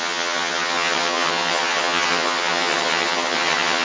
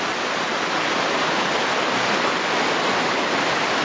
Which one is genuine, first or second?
second